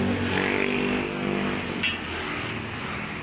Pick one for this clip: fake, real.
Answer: real